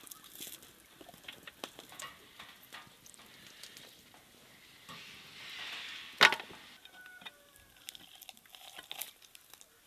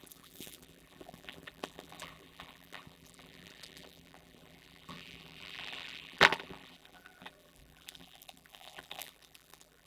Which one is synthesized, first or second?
second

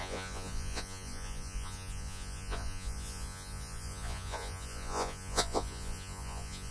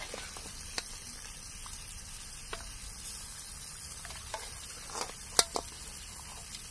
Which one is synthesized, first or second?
first